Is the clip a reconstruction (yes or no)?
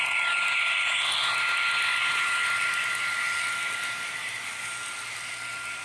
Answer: no